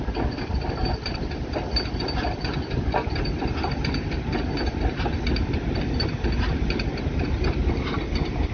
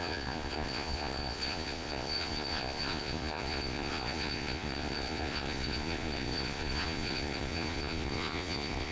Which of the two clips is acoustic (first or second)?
first